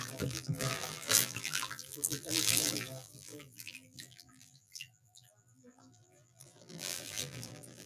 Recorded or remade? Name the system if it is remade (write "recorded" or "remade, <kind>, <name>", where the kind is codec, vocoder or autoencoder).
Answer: remade, vocoder, BigVGAN v2